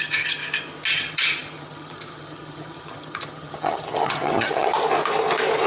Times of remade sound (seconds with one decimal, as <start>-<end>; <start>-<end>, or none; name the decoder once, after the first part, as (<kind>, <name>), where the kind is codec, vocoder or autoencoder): 0.0-0.4 (vocoder, HiFi-GAN); 0.9-4.7